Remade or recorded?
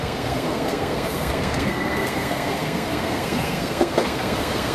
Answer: remade